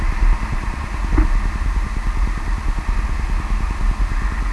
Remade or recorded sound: recorded